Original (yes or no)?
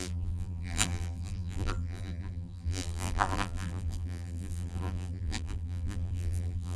no